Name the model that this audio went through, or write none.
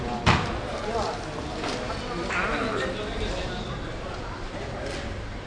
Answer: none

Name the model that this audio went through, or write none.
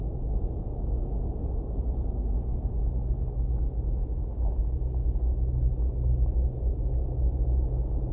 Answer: none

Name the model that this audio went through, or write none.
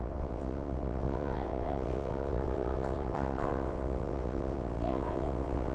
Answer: vocoder, WaveNeXt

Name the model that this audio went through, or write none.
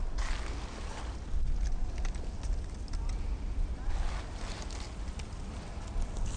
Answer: none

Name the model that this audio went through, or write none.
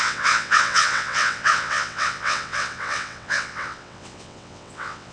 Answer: vocoder, WaveNeXt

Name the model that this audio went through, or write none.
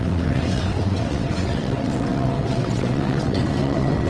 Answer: vocoder, WaveNeXt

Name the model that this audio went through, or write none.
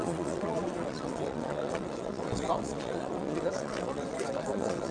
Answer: vocoder, WaveNeXt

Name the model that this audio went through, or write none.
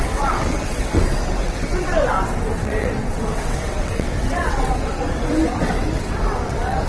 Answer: vocoder, WaveNeXt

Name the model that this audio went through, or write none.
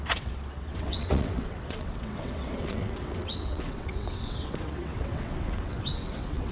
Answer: vocoder, WaveNeXt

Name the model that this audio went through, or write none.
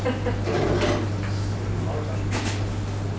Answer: none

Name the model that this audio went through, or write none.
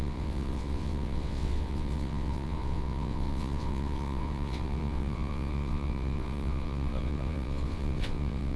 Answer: vocoder, WaveNeXt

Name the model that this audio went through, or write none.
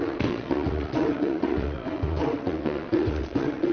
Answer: vocoder, WaveNeXt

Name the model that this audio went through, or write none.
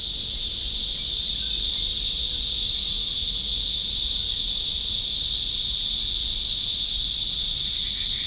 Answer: none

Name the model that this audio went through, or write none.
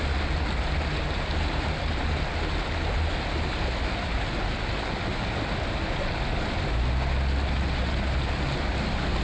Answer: none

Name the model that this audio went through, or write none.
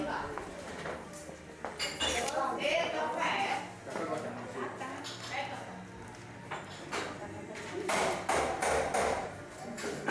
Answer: none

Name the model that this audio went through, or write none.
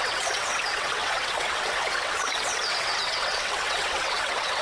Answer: vocoder, WaveNeXt